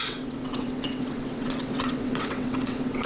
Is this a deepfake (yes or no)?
yes